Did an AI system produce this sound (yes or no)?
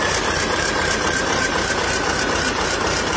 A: yes